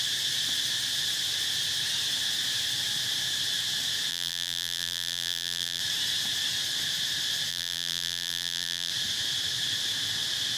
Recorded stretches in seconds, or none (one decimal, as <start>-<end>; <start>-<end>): 0.0-4.1; 5.8-7.5; 8.9-10.6